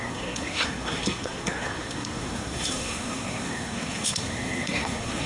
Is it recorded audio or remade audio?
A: remade